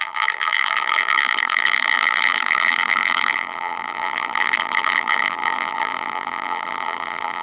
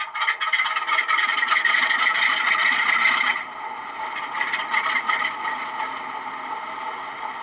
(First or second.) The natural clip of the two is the second